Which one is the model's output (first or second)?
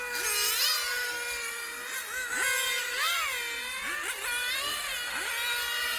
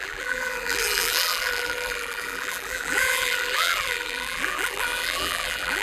second